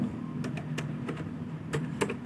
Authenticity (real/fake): real